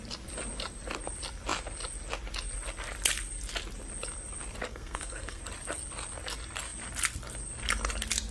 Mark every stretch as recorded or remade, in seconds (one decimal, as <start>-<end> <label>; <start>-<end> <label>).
0.0-4.7 recorded; 4.7-5.4 remade; 5.4-8.3 recorded